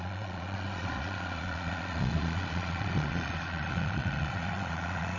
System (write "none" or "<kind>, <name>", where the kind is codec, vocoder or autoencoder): vocoder, Vocos